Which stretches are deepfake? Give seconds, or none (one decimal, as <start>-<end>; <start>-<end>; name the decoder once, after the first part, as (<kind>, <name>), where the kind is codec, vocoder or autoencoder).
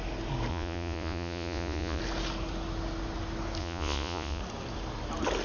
0.5-2.0 (vocoder, Vocos); 3.6-4.4